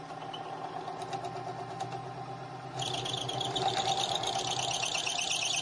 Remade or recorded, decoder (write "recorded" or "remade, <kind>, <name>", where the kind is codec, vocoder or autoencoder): recorded